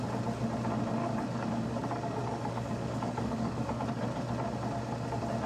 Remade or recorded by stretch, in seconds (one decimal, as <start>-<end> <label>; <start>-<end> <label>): 0.0-1.0 recorded; 1.0-4.0 remade; 4.0-5.5 recorded